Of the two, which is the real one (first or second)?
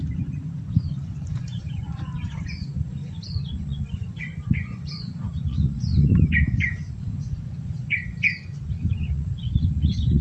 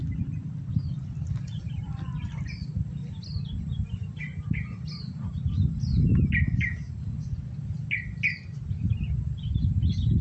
second